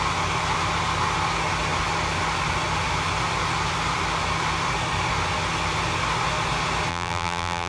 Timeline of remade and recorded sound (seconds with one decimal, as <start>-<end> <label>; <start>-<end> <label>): 0.0-6.9 recorded; 6.9-7.7 remade